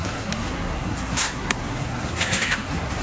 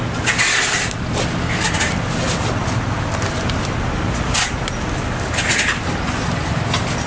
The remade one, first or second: first